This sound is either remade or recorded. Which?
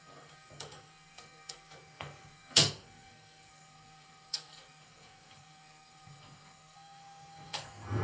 remade